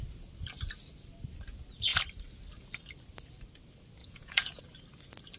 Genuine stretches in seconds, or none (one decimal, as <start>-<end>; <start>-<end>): 0.0-4.0; 4.6-5.4

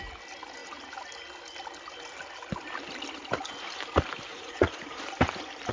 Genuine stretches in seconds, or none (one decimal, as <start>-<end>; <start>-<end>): 0.0-4.3; 5.0-5.7

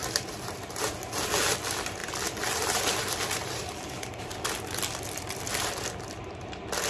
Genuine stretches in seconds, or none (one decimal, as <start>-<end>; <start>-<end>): 0.9-2.0; 5.7-6.9

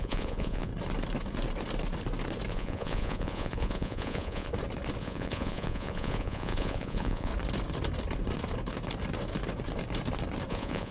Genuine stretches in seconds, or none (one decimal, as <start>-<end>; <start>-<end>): 0.7-2.5; 4.5-5.0; 7.3-10.5

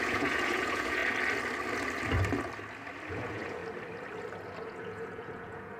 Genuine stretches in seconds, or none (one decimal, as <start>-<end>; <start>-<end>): 1.0-3.1; 3.6-4.6

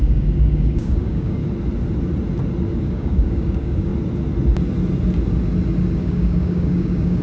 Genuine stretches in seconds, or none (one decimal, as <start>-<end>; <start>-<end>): 1.4-2.8; 3.9-6.0

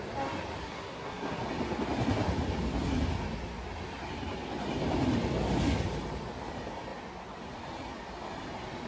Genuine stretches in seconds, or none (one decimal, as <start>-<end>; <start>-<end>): 0.0-0.6; 1.4-8.9